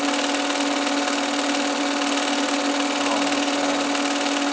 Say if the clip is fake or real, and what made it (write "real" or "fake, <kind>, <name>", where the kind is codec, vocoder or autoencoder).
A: real